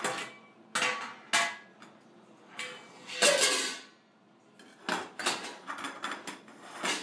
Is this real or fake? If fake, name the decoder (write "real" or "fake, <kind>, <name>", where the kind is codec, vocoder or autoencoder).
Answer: real